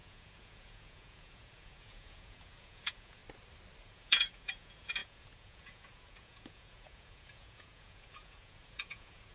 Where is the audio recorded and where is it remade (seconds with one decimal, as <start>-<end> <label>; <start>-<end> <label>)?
0.0-3.2 remade; 3.2-3.8 recorded; 3.8-9.3 remade